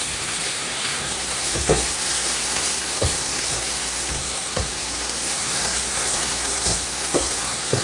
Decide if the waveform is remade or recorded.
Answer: remade